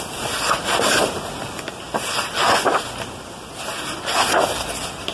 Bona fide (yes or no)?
yes